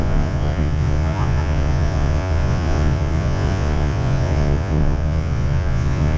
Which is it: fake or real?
fake